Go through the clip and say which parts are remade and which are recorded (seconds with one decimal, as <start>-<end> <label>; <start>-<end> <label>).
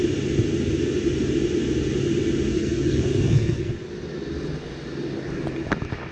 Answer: 0.0-2.5 recorded; 2.5-3.7 remade; 3.7-6.1 recorded